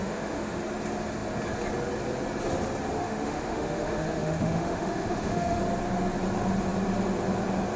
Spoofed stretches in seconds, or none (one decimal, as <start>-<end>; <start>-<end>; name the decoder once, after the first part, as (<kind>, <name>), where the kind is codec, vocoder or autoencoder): 0.0-0.6 (autoencoder, DAC-VAE); 3.0-5.6

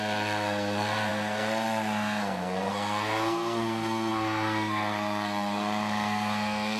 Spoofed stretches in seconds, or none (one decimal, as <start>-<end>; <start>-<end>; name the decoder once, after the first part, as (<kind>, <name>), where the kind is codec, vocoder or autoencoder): 0.0-6.8 (codec, SNAC)

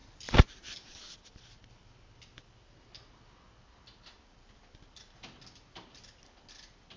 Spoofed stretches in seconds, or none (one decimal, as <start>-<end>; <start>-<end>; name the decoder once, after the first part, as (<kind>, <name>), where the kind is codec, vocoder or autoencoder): none

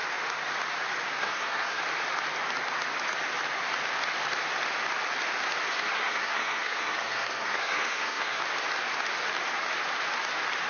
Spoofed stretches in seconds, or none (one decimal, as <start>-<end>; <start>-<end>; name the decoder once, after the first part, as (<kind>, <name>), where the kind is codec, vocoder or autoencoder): 1.2-1.8 (codec, SNAC); 5.7-8.4

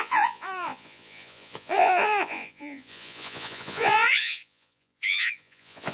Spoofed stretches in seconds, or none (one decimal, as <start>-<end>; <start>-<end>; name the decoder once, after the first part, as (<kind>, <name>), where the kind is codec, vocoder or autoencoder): 0.0-5.9 (vocoder, Vocos)

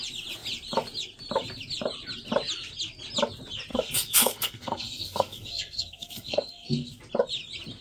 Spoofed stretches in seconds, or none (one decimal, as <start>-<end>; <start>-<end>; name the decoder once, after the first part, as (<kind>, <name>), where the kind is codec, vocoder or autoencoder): 3.7-7.0 (codec, SNAC)

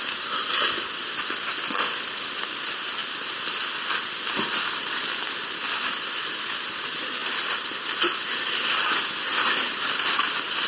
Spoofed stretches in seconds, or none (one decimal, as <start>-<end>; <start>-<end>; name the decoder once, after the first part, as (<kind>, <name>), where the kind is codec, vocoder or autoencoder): 0.0-10.7 (vocoder, BigVGAN v2)

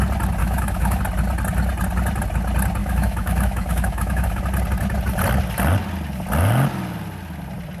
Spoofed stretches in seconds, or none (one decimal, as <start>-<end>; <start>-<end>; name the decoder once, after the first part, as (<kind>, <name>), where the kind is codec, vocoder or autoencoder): 0.4-1.0 (autoencoder, DAC-VAE); 2.8-4.4